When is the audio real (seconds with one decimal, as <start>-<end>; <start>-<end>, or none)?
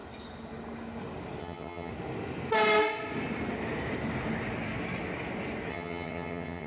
0.0-1.4; 1.9-5.7